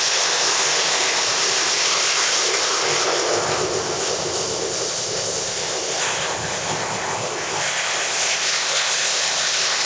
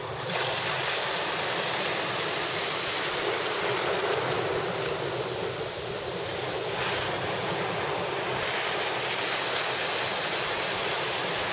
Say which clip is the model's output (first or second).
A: first